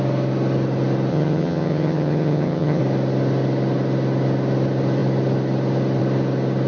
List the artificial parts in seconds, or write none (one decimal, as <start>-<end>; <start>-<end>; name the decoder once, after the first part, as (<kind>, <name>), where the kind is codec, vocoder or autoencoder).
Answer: 1.1-2.8 (vocoder, HiFi-GAN)